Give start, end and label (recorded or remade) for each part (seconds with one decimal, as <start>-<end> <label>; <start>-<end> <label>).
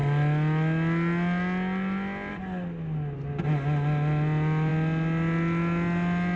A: 0.0-6.4 recorded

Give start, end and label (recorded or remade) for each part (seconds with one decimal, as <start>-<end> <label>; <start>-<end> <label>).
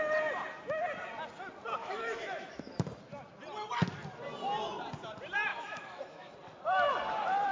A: 0.0-1.8 recorded; 1.8-2.7 remade; 2.7-5.5 recorded; 5.5-6.3 remade; 6.3-7.5 recorded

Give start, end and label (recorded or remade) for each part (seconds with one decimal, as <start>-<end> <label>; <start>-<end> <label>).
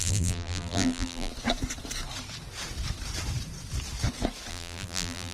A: 0.0-1.3 remade; 1.3-4.5 recorded; 4.5-5.3 remade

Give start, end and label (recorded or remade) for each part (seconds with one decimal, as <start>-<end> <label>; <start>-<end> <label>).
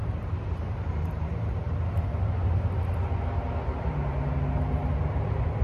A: 0.0-1.7 remade; 1.7-5.6 recorded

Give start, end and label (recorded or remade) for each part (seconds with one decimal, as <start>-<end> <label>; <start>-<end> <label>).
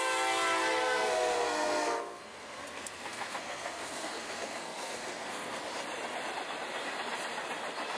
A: 0.0-0.8 recorded; 0.8-5.6 remade; 5.6-8.0 recorded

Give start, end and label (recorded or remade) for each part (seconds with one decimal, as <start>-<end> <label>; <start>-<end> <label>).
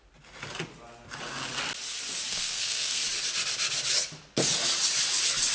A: 0.0-2.3 recorded; 2.3-3.0 remade; 3.0-5.5 recorded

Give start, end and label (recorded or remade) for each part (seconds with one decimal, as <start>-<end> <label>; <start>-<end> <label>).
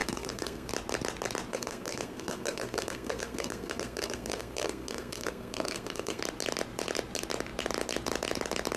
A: 0.0-0.7 remade; 0.7-1.5 recorded; 1.5-6.2 remade; 6.2-8.8 recorded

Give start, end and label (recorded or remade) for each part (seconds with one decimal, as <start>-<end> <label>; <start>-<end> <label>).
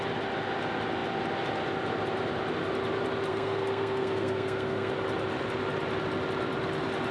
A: 0.0-3.3 recorded; 3.3-4.9 remade; 4.9-7.1 recorded